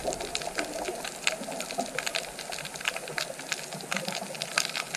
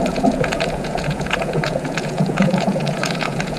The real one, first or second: first